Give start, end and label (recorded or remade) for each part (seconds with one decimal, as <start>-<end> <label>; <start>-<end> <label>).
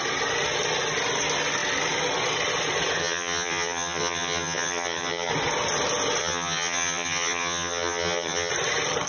0.0-3.0 recorded; 3.0-5.3 remade; 5.3-6.2 recorded; 6.2-8.5 remade; 8.5-9.1 recorded